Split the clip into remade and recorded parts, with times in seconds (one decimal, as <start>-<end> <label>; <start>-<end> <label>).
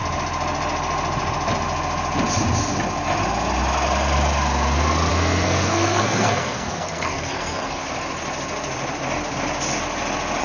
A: 0.0-5.1 recorded; 5.1-7.8 remade; 7.8-10.4 recorded